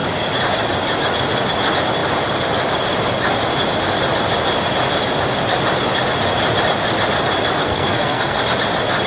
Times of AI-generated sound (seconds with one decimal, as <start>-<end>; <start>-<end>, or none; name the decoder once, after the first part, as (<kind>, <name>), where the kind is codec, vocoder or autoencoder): 7.6-8.4 (codec, SNAC)